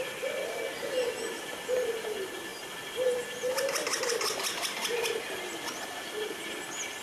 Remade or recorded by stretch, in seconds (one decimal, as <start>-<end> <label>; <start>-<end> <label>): 0.0-7.0 recorded